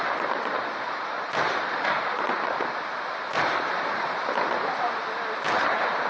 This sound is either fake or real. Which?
real